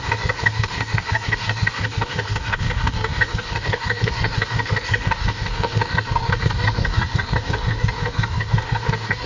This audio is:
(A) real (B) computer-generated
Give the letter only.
B